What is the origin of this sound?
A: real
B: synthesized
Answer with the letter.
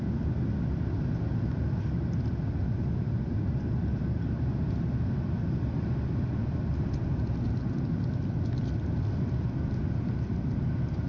A